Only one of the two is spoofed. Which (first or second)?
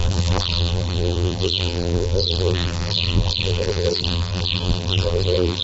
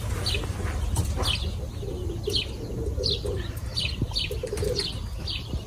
first